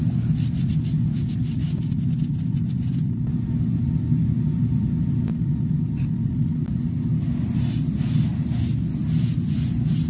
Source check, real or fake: real